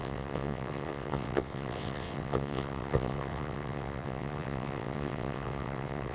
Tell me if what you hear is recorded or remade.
remade